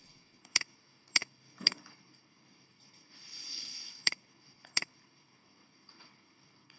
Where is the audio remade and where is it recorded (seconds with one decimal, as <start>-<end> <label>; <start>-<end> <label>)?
0.0-6.8 remade